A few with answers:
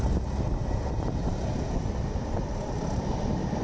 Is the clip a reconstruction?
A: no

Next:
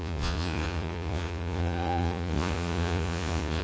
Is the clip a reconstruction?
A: yes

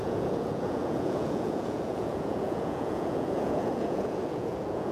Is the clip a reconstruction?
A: yes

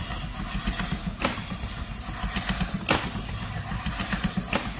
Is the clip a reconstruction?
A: no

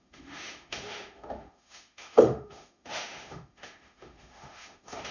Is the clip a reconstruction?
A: yes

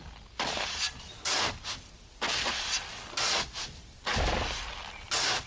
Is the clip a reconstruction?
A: no